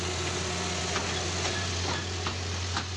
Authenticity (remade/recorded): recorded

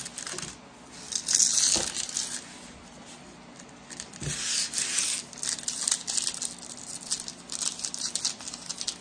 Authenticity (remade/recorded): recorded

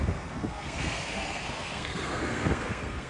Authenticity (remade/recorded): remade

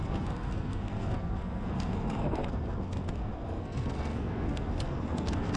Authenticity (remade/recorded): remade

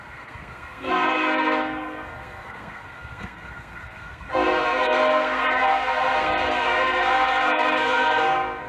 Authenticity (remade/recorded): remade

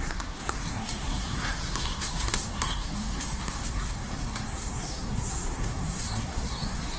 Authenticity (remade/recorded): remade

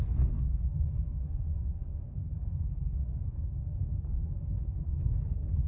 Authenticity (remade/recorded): remade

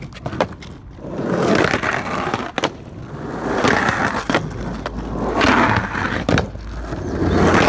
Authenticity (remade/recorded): recorded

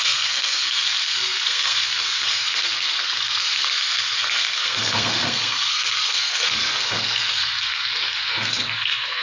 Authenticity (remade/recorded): remade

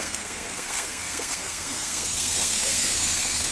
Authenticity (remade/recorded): remade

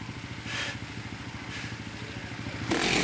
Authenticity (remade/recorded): recorded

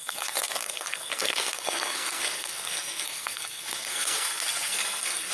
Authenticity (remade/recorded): remade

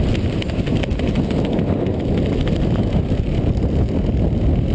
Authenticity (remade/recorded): recorded